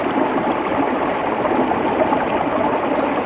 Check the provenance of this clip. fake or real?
real